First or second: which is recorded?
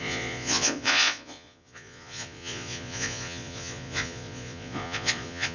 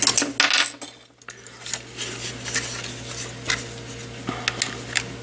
second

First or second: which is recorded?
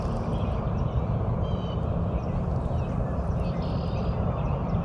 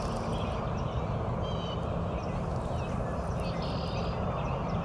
second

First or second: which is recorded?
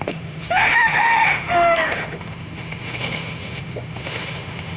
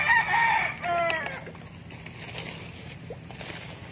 second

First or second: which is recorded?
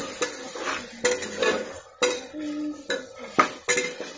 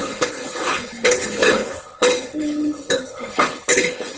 first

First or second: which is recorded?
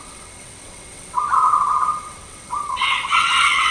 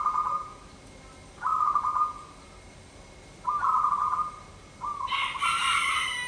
second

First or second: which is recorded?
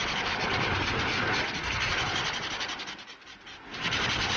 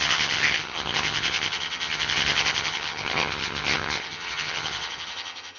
first